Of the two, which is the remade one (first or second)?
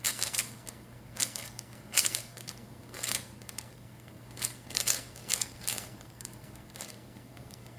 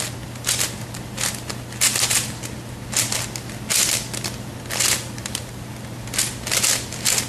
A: first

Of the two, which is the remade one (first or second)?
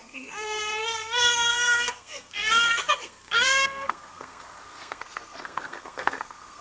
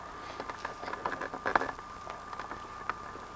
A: first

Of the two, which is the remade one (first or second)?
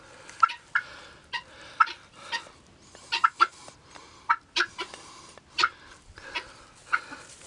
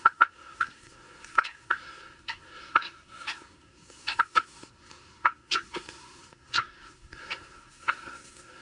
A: second